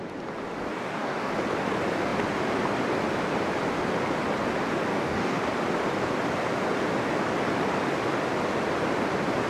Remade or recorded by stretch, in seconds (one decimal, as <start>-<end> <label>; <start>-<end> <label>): 0.0-0.7 recorded; 0.7-1.3 remade; 1.3-4.9 recorded; 4.9-5.4 remade; 5.4-9.5 recorded